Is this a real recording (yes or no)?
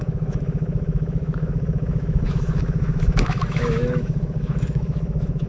no